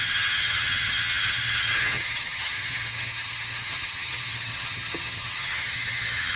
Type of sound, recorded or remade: remade